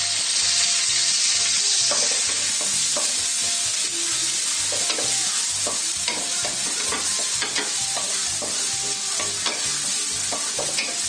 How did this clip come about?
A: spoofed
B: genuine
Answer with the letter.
B